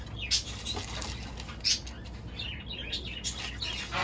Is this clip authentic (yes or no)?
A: yes